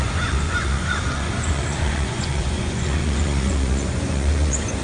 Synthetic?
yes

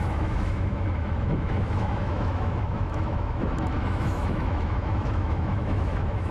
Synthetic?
yes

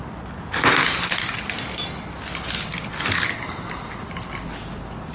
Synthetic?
no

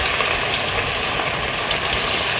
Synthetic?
no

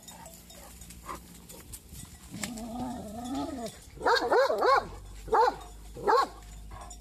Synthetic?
yes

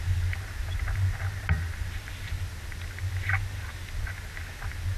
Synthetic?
no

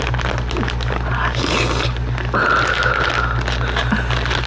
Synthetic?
no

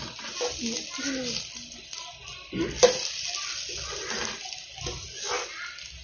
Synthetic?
no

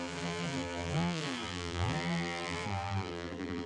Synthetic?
yes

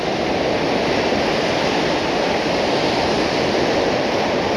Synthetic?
no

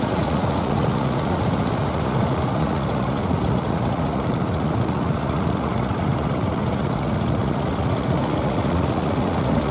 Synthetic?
yes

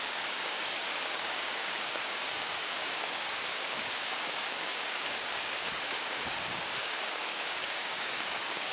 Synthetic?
yes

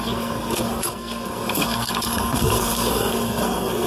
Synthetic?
yes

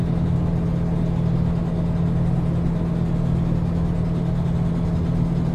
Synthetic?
no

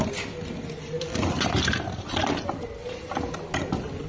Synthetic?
no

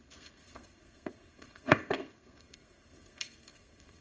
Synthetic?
yes